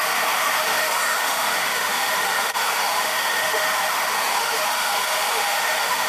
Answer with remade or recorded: remade